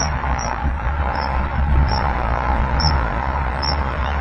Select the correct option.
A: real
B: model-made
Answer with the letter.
B